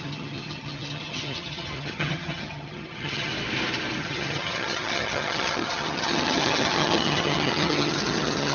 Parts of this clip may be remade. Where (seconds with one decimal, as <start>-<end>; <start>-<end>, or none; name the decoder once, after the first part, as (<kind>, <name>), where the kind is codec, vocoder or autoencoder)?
0.0-3.3 (vocoder, HiFi-GAN); 4.0-8.5